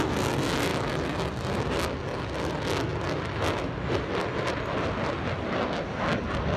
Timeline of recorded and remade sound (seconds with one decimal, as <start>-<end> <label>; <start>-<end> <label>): 0.0-6.6 recorded